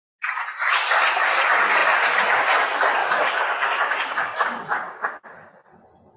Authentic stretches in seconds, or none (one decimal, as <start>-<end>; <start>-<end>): 0.0-3.0; 5.1-6.2